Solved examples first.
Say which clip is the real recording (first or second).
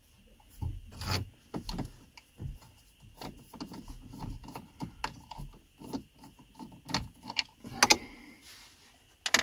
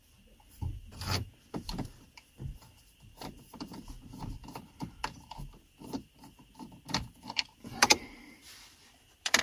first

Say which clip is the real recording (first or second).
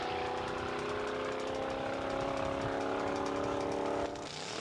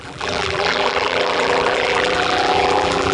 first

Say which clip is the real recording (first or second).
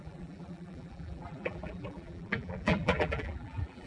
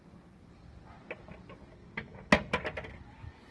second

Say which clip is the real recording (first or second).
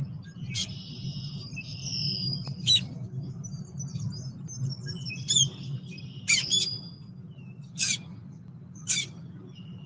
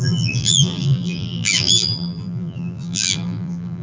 first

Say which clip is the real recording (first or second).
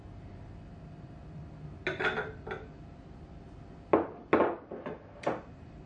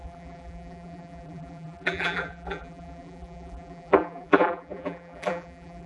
first